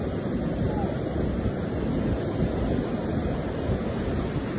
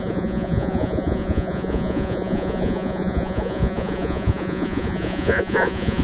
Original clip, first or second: first